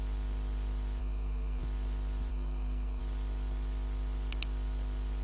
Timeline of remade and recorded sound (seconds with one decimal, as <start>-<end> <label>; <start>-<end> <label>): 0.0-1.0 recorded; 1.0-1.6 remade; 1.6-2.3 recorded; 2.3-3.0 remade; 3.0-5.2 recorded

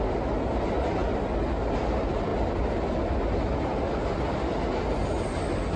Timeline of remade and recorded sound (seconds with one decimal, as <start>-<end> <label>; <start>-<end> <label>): 0.0-5.8 recorded

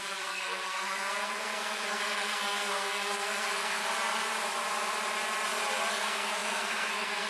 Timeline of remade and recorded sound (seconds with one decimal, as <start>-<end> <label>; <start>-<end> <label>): 0.0-3.8 remade; 3.8-5.9 recorded; 5.9-7.3 remade

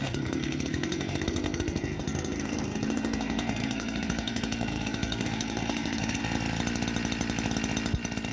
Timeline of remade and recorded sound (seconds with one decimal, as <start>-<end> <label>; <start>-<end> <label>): 0.0-6.2 remade; 6.2-8.3 recorded